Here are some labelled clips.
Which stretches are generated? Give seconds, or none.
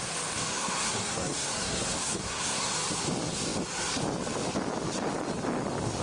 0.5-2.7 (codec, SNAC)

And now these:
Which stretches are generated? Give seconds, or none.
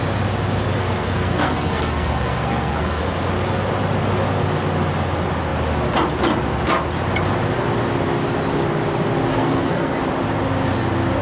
0.8-3.0 (codec, SNAC); 9.3-10.0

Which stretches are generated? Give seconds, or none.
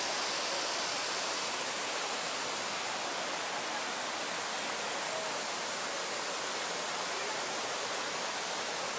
1.0-2.0 (vocoder, BigVGAN v2)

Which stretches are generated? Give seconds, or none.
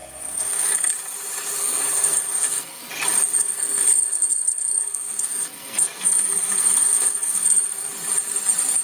0.0-0.9 (codec, SNAC); 1.6-2.8; 3.4-7.9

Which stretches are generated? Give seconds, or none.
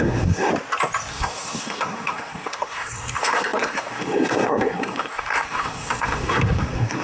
0.0-0.5 (codec, SNAC); 1.1-7.0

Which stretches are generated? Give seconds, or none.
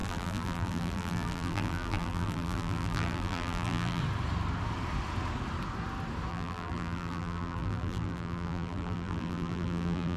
0.0-4.0 (vocoder, BigVGAN v2); 6.3-10.2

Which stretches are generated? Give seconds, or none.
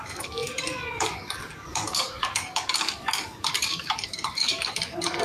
0.0-5.2 (codec, DAC)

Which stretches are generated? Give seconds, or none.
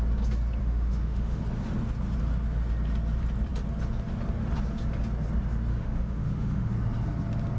0.6-1.4 (autoencoder, DAC-VAE); 5.7-6.7